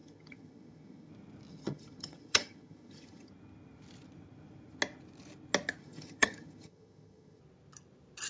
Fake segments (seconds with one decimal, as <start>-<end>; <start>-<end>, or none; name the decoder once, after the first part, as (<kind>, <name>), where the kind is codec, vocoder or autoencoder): 0.0-1.1 (vocoder, HiFi-GAN); 1.5-3.3; 5.8-7.4